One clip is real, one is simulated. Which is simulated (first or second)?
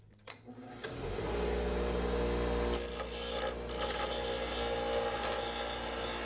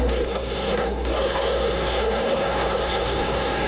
second